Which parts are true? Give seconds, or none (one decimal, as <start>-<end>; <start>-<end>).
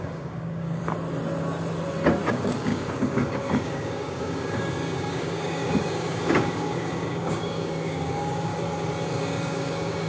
0.8-2.3; 8.5-9.2